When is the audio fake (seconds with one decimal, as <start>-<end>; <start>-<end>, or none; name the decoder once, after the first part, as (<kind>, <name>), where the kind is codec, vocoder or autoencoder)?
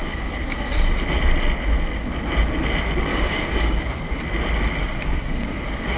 0.0-0.7 (codec, DAC); 3.1-4.2; 4.8-6.0